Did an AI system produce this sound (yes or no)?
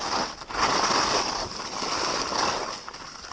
no